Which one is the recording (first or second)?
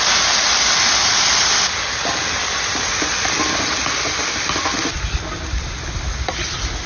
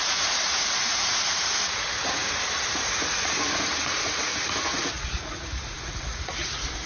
first